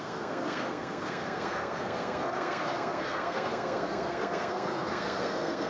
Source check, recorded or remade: remade